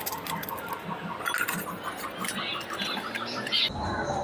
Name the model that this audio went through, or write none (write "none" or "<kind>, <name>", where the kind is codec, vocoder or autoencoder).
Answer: none